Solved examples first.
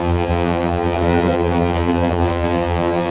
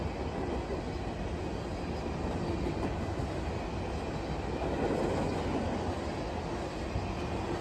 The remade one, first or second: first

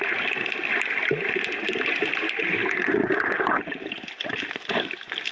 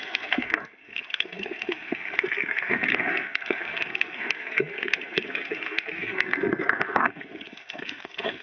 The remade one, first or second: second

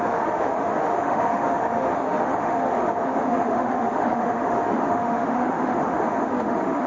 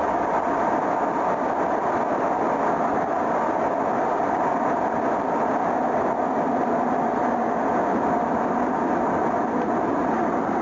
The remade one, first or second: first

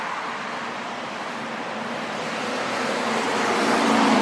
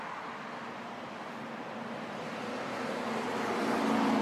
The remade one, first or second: first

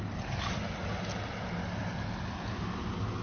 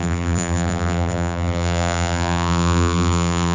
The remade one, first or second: second